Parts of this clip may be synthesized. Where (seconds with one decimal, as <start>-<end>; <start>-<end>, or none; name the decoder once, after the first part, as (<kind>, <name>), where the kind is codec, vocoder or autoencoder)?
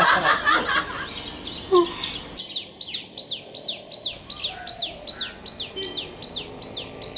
none